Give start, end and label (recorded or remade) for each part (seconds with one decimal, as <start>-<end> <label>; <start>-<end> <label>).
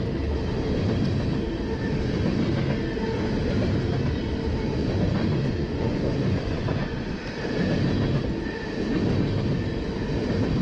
0.0-4.8 recorded; 4.8-7.2 remade; 7.2-10.6 recorded